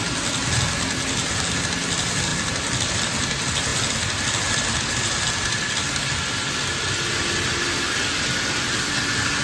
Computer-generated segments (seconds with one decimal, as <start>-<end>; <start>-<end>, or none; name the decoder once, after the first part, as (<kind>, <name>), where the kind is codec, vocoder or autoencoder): none